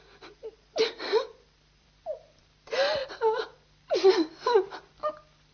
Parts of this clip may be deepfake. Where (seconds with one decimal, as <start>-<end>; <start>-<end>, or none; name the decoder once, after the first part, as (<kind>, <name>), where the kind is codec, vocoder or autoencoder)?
none